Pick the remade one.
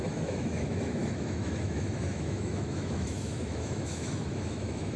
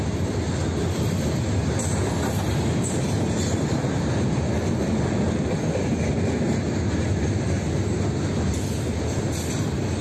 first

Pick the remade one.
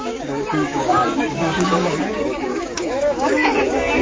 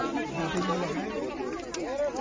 first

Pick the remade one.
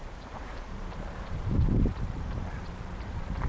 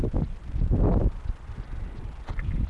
first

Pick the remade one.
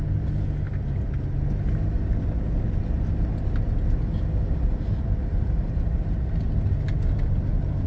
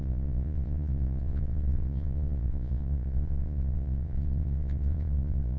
second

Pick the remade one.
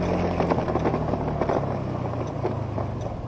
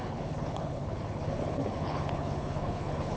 second